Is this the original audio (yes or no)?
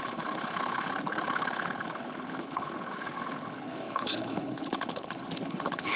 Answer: no